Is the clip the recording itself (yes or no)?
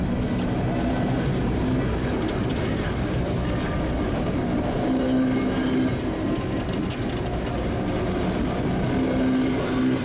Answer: yes